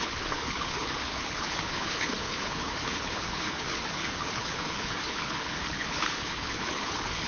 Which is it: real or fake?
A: fake